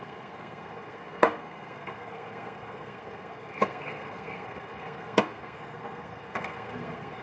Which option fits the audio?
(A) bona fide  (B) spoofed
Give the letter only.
B